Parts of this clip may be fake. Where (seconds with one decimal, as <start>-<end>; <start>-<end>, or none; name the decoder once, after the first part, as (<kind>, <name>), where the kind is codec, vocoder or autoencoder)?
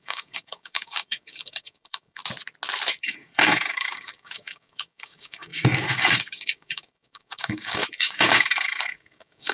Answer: 0.0-2.2 (codec, DAC); 3.0-9.5